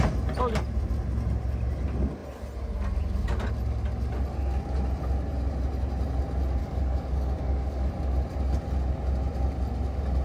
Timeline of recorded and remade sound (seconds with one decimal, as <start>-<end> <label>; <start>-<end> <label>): 0.0-6.6 recorded; 6.6-7.9 remade; 7.9-10.2 recorded